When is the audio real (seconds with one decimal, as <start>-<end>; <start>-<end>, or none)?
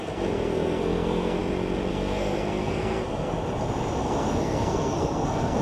1.4-1.9; 3.4-4.0